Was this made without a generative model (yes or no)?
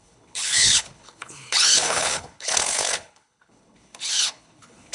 no